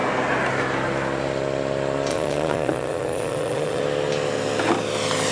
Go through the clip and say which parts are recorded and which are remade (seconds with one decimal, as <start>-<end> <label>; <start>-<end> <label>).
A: 0.0-2.1 recorded; 2.1-3.8 remade; 3.8-5.3 recorded